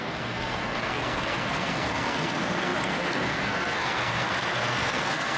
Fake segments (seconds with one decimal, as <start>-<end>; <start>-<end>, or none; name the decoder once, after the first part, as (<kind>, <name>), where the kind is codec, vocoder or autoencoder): 0.0-5.4 (codec, SNAC)